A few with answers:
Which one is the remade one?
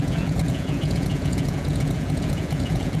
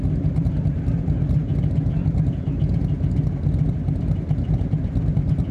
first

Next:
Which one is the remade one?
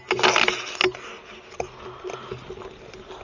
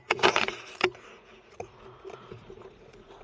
second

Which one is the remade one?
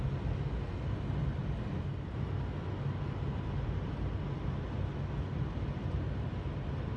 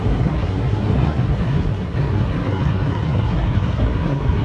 second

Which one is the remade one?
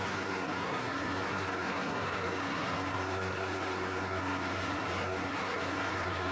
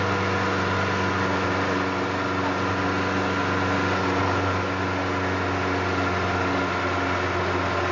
first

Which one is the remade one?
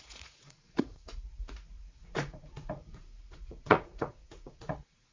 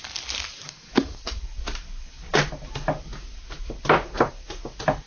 first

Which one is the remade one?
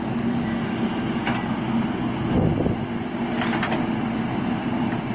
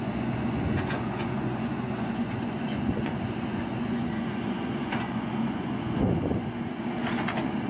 second